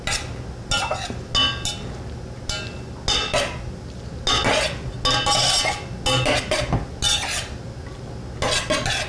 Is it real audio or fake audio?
real